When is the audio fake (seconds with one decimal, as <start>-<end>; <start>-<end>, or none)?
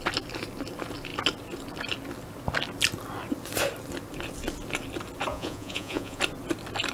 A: 5.3-6.2